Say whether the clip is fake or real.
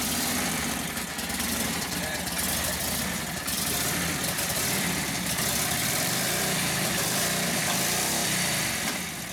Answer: fake